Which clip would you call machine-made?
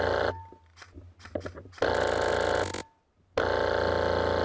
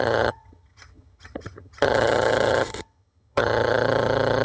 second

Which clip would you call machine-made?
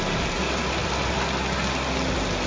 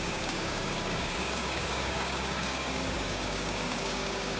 second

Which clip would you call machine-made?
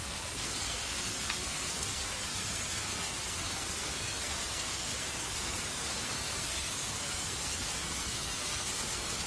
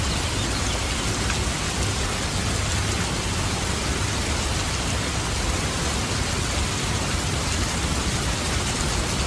first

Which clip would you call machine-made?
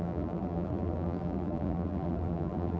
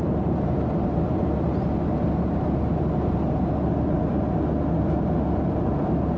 first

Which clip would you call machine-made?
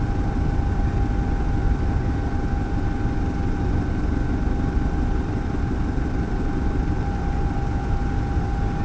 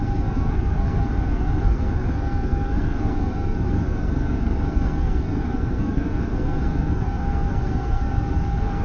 second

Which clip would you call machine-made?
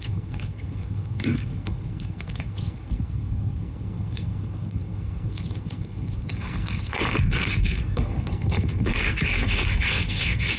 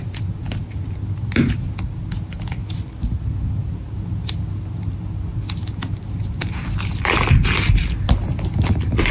first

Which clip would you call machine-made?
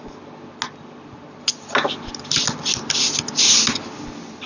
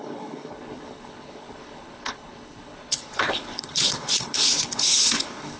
second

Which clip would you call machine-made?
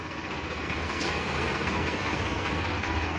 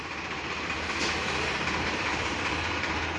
first